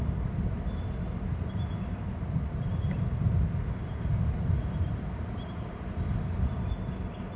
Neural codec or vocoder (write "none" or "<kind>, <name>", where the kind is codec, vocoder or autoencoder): none